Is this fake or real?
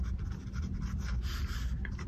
real